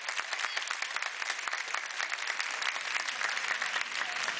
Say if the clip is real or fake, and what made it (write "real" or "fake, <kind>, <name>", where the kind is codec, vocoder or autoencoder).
real